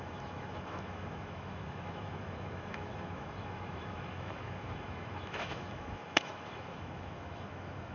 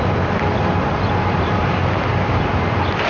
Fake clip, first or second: first